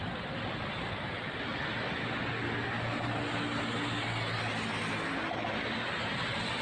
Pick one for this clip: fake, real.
real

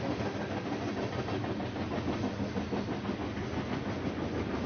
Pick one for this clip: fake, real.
real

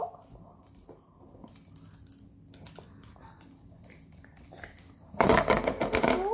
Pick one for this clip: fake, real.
real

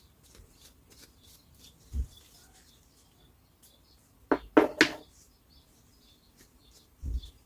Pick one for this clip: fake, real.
real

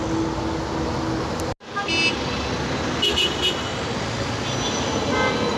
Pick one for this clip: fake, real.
real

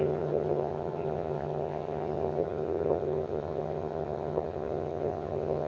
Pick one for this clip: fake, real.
fake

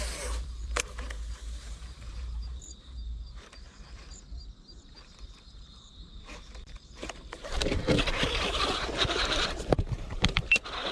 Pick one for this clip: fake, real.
fake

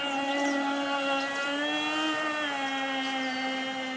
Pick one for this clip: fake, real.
real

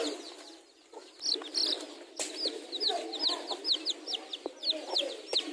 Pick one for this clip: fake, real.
real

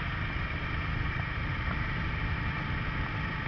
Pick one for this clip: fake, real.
real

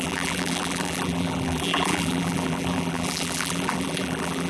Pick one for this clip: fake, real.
fake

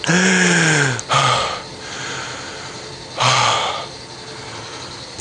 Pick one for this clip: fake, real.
real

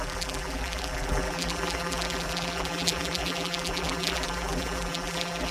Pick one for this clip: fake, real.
fake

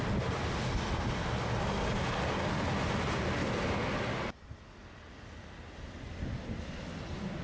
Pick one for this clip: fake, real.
real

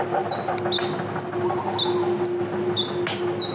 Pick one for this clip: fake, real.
real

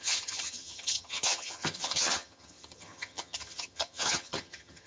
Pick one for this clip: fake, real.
fake